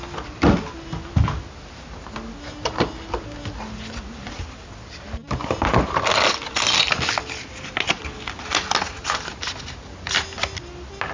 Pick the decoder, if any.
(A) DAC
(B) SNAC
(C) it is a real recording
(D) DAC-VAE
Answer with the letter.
C